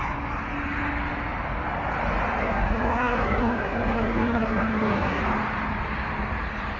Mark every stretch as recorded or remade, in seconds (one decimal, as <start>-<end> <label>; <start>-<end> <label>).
0.0-2.4 recorded; 2.4-5.2 remade; 5.2-6.8 recorded

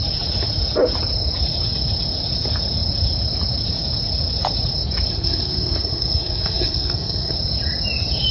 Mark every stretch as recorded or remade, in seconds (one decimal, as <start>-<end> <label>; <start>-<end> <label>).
0.0-5.1 recorded; 5.1-7.3 remade; 7.3-8.3 recorded